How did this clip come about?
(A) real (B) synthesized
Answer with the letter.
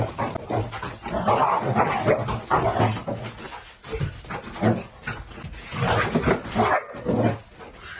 A